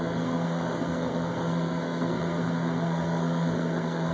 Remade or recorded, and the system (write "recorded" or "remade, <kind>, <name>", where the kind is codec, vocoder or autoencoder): remade, codec, SNAC